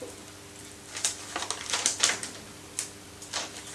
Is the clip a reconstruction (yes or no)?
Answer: no